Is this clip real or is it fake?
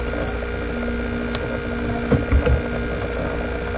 real